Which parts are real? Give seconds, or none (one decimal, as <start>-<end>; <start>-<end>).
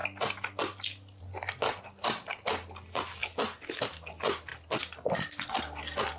0.0-6.2